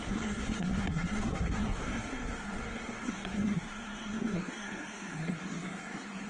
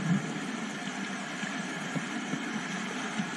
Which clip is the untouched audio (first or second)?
second